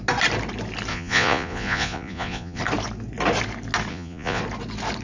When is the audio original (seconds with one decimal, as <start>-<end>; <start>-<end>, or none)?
0.0-0.9; 2.6-3.9; 4.4-5.0